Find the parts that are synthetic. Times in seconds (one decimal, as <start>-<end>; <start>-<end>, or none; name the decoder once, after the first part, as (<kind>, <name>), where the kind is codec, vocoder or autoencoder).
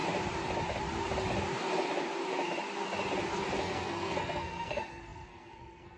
3.6-6.0 (codec, SNAC)